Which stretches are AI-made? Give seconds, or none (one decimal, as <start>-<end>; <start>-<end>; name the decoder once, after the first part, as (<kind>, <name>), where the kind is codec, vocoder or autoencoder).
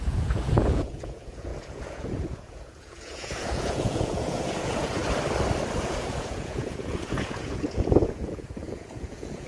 0.0-5.0 (vocoder, Vocos); 5.8-9.5